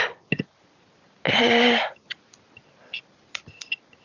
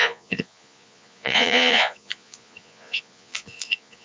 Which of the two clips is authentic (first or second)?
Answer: first